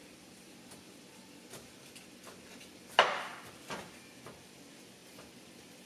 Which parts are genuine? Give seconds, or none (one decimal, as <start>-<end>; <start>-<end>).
0.0-5.9